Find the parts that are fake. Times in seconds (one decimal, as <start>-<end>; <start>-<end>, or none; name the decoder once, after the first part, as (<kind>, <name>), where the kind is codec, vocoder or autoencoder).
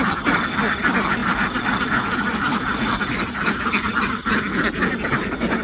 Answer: 2.3-4.5 (vocoder, BigVGAN v2)